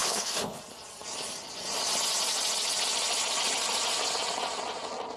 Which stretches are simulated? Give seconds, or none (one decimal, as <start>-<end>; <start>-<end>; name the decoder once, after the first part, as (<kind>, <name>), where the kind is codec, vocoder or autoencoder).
0.0-0.6 (codec, HILCodec)